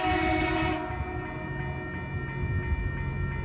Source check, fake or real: real